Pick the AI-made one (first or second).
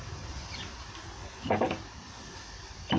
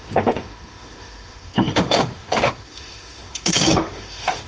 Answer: second